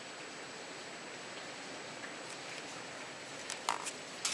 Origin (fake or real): real